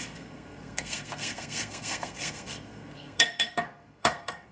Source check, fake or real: fake